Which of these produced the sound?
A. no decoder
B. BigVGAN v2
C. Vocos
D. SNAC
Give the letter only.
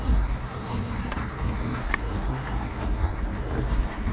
D